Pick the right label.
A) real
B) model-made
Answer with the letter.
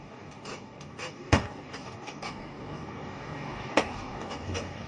B